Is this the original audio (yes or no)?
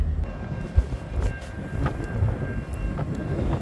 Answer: yes